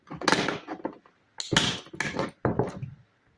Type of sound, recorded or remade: recorded